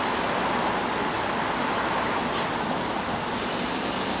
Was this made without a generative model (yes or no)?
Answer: yes